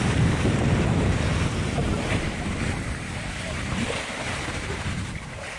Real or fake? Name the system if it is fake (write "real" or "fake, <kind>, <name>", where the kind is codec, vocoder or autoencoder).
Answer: fake, vocoder, BigVGAN v2